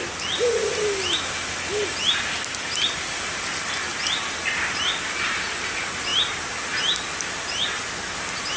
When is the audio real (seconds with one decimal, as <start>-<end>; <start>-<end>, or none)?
0.0-8.6